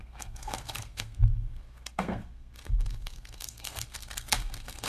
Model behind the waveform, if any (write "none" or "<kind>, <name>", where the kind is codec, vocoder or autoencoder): codec, SNAC